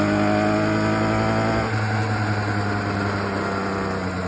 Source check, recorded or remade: recorded